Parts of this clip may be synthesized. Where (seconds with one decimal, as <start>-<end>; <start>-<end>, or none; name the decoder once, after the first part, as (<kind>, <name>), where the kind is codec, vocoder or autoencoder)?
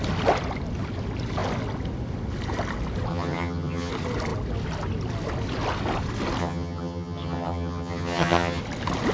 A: 3.1-3.9 (vocoder, HiFi-GAN); 6.4-8.6